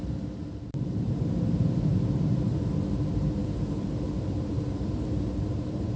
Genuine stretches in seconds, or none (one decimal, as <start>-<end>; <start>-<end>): none